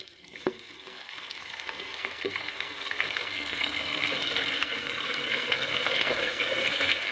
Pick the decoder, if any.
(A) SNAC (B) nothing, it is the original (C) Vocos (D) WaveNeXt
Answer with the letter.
A